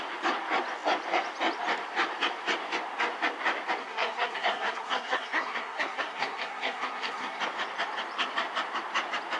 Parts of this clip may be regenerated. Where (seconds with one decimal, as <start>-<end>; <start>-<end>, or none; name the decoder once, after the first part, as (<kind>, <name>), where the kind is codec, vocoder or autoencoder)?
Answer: 3.8-7.4 (codec, SNAC)